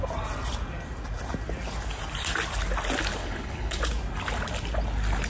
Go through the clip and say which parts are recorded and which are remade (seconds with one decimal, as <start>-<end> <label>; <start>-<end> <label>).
0.0-3.2 recorded; 3.2-3.8 remade; 3.8-5.3 recorded